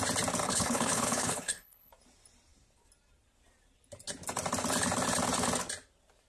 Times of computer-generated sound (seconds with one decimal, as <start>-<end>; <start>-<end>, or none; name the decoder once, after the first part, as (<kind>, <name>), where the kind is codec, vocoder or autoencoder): 0.4-1.9 (codec, HILCodec)